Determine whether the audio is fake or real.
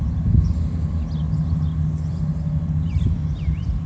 real